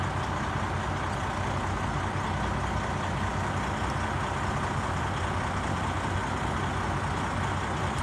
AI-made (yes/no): no